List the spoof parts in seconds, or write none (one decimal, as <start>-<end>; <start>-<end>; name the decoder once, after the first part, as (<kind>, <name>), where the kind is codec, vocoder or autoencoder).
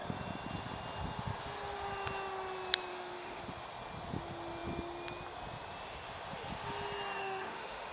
2.9-3.4 (autoencoder, DAC-VAE); 7.2-7.9